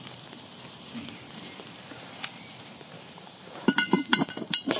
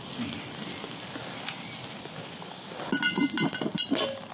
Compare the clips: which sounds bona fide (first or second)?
second